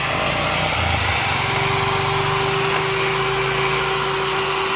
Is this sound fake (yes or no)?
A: no